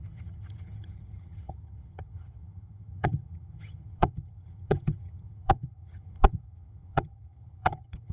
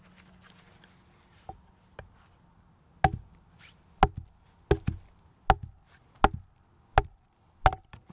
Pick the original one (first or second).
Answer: second